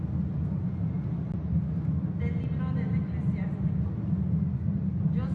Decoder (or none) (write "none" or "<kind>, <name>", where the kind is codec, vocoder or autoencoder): none